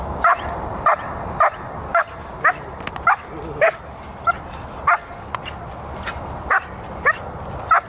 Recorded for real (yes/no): yes